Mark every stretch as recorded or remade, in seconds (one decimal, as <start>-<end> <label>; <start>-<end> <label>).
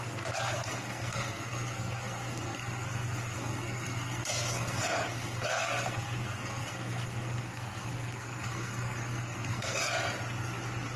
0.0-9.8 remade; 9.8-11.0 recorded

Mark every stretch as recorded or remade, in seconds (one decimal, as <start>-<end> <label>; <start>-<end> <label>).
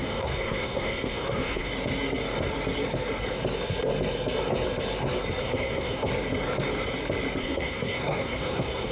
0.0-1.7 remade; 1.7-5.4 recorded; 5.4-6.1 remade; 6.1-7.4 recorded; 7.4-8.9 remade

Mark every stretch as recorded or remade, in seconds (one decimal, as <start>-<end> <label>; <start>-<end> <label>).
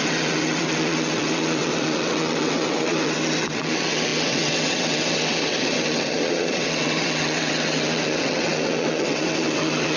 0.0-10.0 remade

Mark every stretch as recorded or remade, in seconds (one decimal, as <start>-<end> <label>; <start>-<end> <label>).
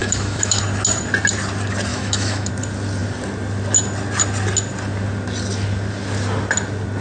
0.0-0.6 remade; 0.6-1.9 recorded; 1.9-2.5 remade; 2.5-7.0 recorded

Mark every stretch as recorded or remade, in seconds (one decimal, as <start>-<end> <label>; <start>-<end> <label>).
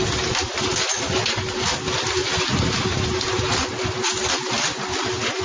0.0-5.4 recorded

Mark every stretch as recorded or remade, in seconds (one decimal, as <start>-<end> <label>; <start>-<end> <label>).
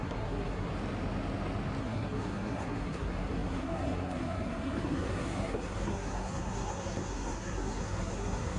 0.0-0.7 remade; 0.7-1.8 recorded; 1.8-8.6 remade